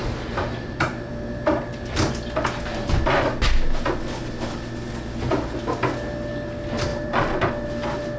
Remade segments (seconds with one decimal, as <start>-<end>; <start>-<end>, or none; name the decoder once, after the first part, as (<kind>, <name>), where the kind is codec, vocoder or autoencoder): 0.0-1.1 (vocoder, BigVGAN v2); 2.7-3.2; 6.9-7.5